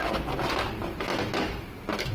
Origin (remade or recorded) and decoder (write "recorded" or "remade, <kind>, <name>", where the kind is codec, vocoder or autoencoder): recorded